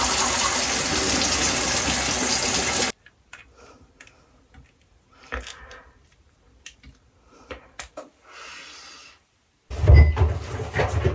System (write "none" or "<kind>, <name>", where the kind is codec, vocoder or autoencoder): none